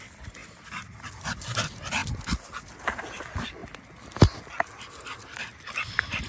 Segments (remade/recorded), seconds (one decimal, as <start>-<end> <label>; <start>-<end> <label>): 0.0-0.4 recorded; 0.4-1.1 remade; 1.1-6.3 recorded